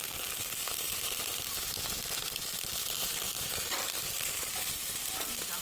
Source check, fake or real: real